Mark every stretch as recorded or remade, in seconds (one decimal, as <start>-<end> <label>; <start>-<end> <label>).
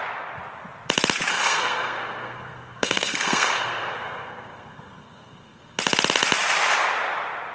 0.0-1.3 recorded; 1.3-5.8 remade; 5.8-7.5 recorded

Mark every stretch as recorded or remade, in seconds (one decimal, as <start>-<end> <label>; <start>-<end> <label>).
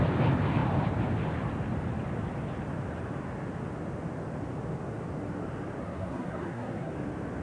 0.0-5.8 recorded; 5.8-6.9 remade; 6.9-7.4 recorded